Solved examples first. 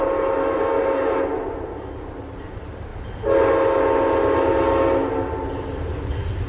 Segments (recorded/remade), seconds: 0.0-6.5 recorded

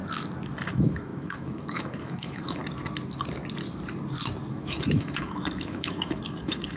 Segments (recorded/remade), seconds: 0.0-0.7 recorded; 0.7-2.6 remade; 2.6-4.5 recorded; 4.5-6.8 remade